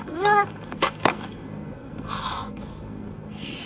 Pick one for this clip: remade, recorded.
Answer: remade